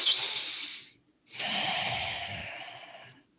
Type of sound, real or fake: real